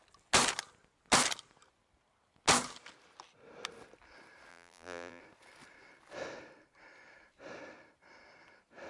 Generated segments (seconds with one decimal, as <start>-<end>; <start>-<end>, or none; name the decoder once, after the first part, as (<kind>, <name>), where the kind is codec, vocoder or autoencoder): 4.5-5.2 (vocoder, BigVGAN v2)